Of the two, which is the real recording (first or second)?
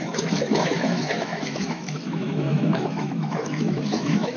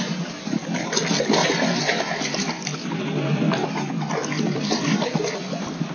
second